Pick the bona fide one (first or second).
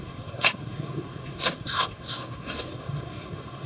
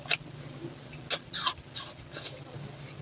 second